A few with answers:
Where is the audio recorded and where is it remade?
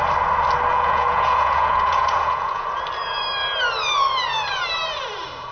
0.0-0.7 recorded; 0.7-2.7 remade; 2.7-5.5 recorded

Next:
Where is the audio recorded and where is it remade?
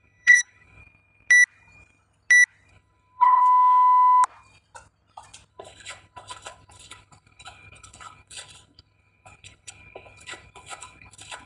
0.0-0.8 remade; 0.8-2.7 recorded; 2.7-3.4 remade; 3.4-5.5 recorded; 5.5-11.5 remade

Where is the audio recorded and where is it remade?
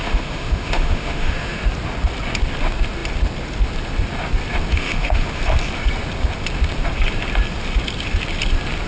0.0-1.6 remade; 1.6-4.7 recorded; 4.7-5.4 remade; 5.4-8.9 recorded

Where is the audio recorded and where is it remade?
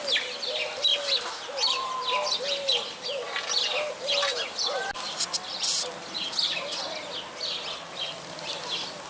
0.0-9.1 recorded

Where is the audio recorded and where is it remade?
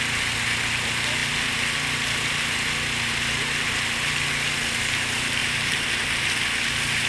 0.0-5.4 recorded; 5.4-6.2 remade; 6.2-7.1 recorded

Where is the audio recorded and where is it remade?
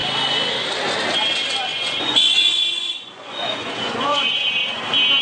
0.0-1.7 recorded; 1.7-4.8 remade; 4.8-5.2 recorded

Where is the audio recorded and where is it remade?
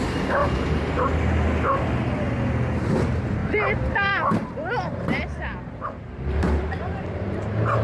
0.0-3.4 recorded; 3.4-7.8 remade